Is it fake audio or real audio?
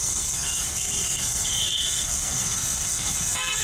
fake